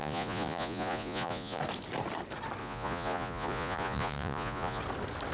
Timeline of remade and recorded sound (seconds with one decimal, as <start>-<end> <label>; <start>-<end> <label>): 0.0-1.6 remade; 1.6-2.6 recorded; 2.6-4.8 remade; 4.8-5.3 recorded